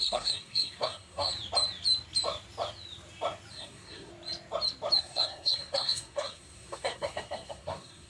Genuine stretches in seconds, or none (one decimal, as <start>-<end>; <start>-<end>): 1.3-3.5; 4.1-5.0